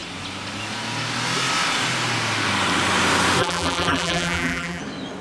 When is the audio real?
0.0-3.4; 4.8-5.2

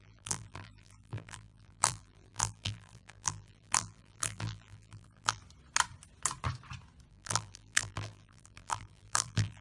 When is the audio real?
5.4-7.1

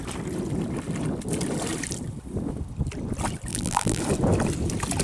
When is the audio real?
0.0-3.5; 4.0-5.0

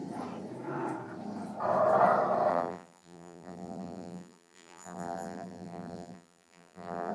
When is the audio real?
0.0-2.5

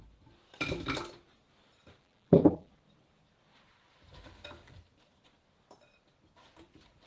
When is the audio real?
0.0-2.0; 2.7-7.1

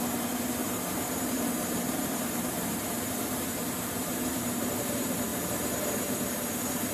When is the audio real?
0.0-0.6; 4.7-6.9

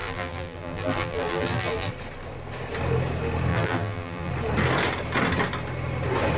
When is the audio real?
1.9-3.5; 4.3-6.4

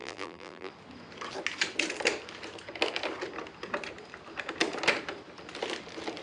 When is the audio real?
0.7-6.2